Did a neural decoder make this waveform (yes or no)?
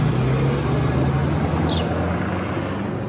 no